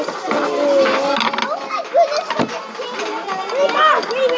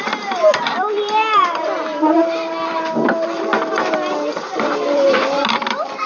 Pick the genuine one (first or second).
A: first